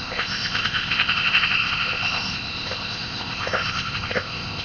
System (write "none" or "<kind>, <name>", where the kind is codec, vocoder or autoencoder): codec, ZipCodec